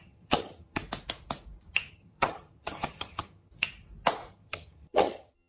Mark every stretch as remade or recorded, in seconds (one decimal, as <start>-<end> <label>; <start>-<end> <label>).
0.0-0.8 remade; 0.8-1.9 recorded; 1.9-3.5 remade; 3.5-4.3 recorded; 4.3-5.5 remade